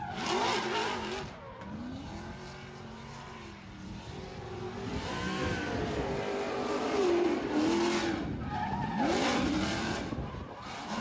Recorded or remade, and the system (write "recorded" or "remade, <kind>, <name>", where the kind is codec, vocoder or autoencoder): recorded